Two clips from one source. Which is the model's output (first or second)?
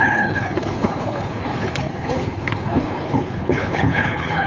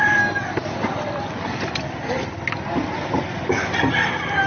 first